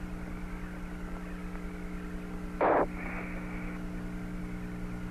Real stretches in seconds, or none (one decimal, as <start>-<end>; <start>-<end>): 0.0-5.1